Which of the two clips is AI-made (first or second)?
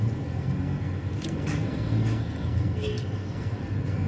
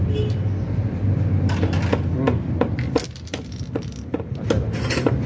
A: first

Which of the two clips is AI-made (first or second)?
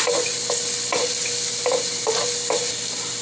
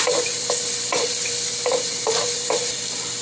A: second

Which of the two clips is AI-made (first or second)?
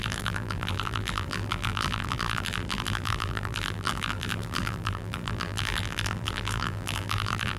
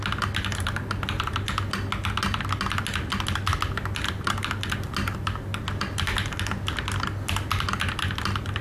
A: first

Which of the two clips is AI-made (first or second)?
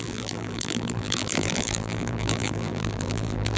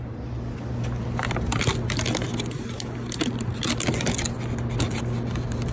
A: first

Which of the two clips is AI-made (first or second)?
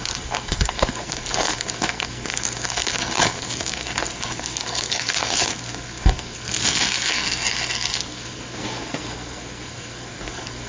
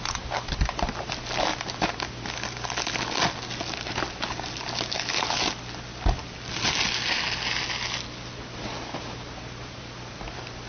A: first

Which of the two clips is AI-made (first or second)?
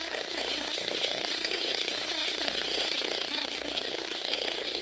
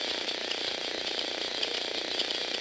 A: first